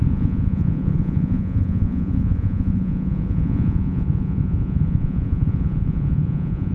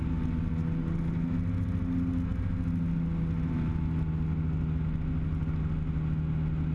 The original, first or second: second